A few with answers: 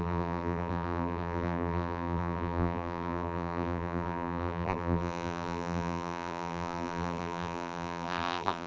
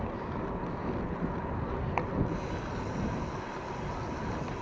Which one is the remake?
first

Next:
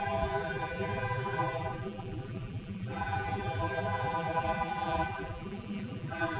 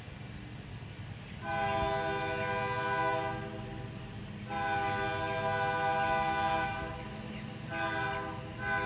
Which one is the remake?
first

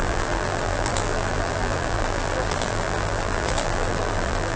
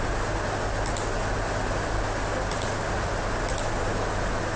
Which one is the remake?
first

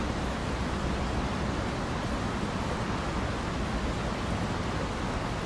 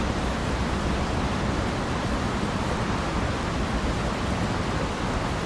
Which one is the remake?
second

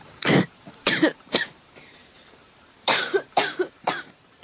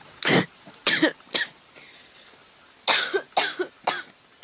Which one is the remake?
first